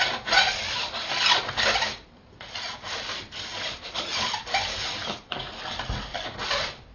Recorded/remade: recorded